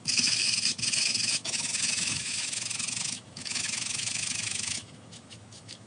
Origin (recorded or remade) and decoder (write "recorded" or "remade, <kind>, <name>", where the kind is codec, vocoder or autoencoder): remade, autoencoder, DAC-VAE